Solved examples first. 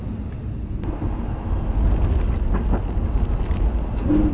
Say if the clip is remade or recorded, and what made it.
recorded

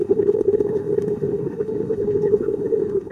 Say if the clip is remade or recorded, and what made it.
remade, autoencoder, DAC-VAE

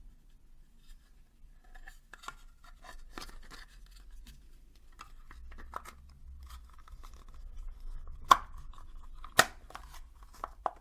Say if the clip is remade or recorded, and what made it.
recorded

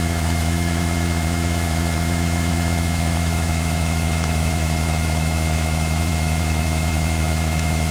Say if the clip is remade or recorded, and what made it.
remade, autoencoder, DAC-VAE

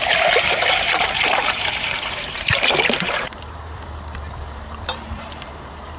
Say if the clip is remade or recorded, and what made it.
remade, vocoder, BigVGAN v2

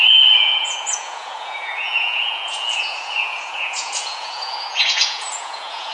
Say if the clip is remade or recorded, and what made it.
remade, vocoder, Vocos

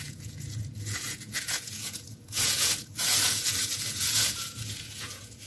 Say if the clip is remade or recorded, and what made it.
remade, vocoder, Vocos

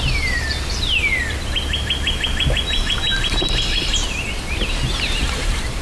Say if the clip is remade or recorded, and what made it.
recorded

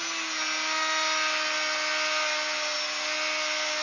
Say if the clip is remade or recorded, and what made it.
recorded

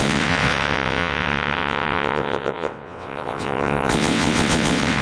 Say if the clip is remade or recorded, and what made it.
remade, vocoder, WaveNeXt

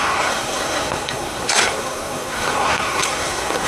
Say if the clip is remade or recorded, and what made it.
remade, codec, SNAC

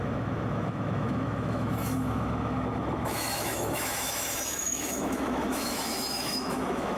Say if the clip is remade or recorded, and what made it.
remade, autoencoder, DAC-VAE